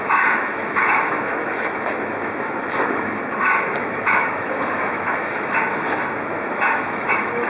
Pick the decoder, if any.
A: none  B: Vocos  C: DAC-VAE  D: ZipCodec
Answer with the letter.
C